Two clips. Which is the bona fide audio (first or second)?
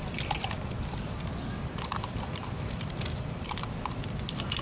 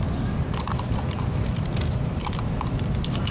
second